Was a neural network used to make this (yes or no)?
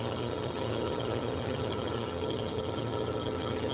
yes